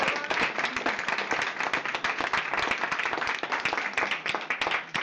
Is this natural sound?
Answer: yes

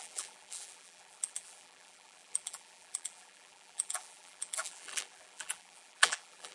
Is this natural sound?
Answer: no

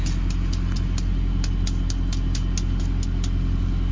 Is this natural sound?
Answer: yes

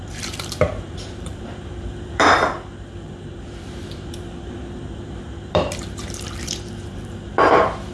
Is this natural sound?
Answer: no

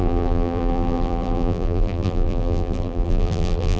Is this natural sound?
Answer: no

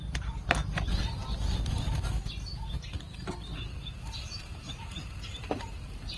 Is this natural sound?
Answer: no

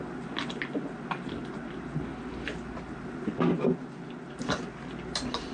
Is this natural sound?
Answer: yes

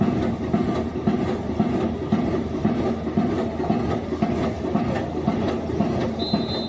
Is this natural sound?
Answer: yes